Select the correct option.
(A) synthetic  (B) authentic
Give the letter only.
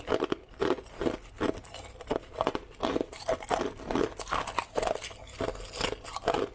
B